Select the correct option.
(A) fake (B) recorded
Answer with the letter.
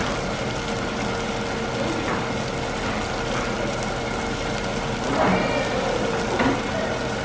B